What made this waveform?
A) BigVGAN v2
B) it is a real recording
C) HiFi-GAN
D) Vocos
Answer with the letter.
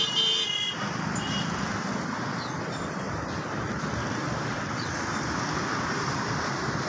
B